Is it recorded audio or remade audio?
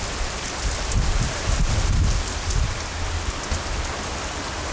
recorded